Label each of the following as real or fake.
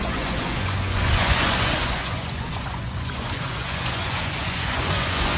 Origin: fake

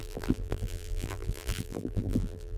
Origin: fake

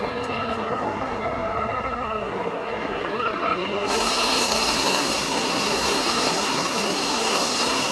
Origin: fake